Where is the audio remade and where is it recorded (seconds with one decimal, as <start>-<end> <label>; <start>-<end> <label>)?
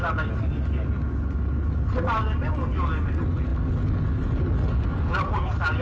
0.0-5.8 recorded